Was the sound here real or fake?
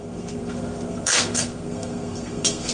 fake